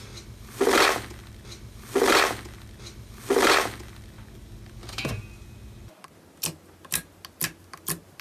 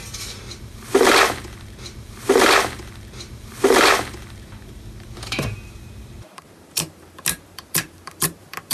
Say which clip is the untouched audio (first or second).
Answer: first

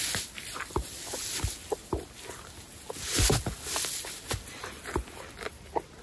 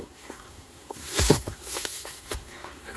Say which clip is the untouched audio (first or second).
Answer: first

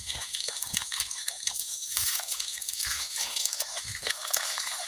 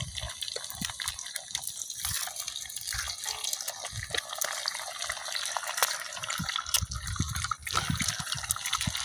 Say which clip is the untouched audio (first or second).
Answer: second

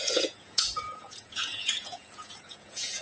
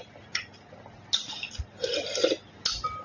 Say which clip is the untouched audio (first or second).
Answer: second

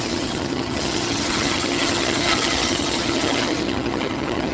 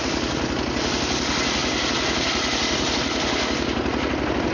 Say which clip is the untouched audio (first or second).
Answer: second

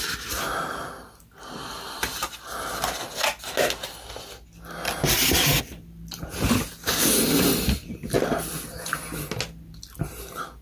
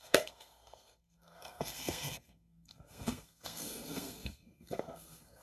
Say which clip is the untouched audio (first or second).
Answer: first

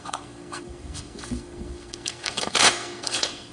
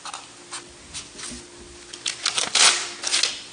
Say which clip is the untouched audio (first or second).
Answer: second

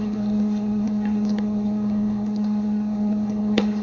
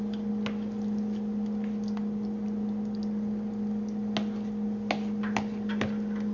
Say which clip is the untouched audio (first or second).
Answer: second